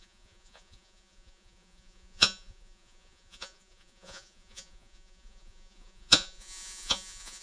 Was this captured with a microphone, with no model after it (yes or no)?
no